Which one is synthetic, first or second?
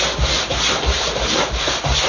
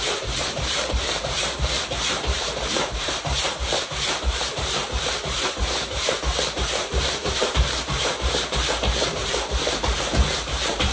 second